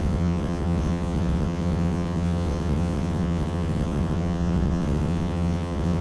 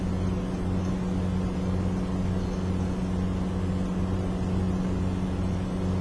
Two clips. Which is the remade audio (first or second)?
first